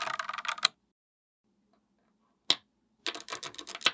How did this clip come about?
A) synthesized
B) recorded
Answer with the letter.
B